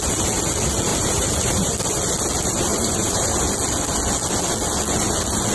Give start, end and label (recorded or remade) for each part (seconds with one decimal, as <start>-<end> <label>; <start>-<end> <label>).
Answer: 0.0-0.9 recorded; 0.9-1.7 remade; 1.7-2.7 recorded; 2.7-3.4 remade; 3.4-5.5 recorded